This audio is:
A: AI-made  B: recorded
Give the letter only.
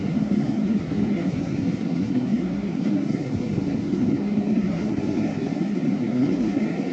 A